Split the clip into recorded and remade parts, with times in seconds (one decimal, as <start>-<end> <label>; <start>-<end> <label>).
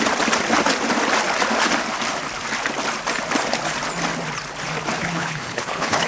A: 0.0-5.0 recorded; 5.0-6.1 remade